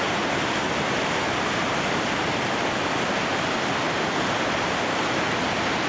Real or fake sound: real